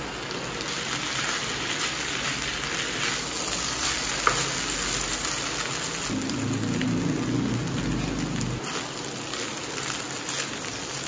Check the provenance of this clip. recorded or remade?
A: recorded